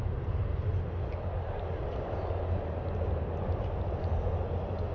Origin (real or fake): real